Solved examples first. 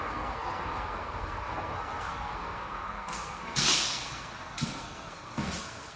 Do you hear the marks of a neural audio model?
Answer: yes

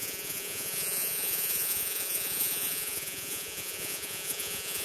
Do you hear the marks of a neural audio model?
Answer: yes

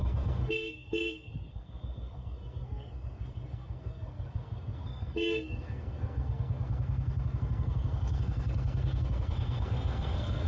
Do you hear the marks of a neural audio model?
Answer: yes